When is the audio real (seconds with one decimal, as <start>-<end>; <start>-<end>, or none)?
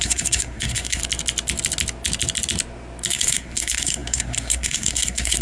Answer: 1.0-3.1